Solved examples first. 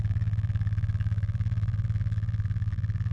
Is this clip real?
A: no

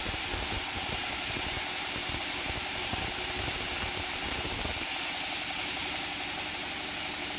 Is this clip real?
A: no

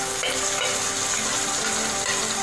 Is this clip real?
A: yes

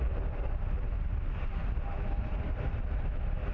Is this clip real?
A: no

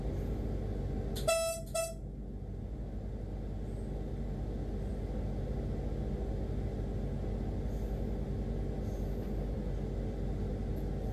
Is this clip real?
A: yes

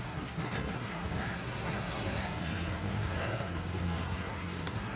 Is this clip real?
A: no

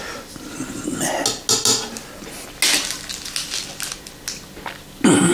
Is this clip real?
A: yes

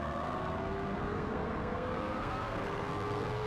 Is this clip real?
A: no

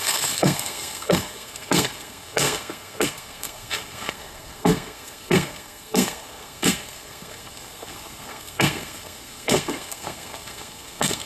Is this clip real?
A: no